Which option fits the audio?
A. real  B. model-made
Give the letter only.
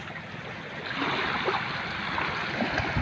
A